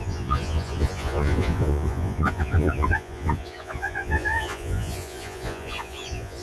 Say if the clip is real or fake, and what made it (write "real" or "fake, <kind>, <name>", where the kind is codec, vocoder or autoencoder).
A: fake, vocoder, Vocos